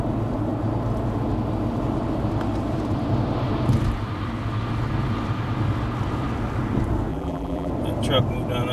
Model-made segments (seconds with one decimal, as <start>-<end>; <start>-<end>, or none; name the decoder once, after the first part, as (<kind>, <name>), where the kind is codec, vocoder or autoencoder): 7.1-7.7 (vocoder, BigVGAN v2)